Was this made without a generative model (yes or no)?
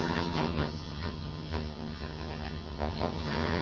no